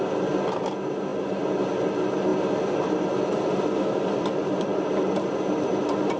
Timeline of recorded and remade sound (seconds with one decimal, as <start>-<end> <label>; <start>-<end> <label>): 0.0-6.2 recorded